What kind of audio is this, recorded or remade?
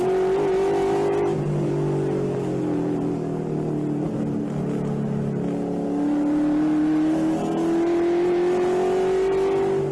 recorded